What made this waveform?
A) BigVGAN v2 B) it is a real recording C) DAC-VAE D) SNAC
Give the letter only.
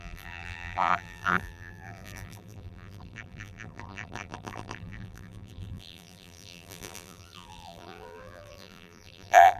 A